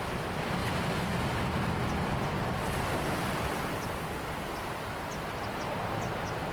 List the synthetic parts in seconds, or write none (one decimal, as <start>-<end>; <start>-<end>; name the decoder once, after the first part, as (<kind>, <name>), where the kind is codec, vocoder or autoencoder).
none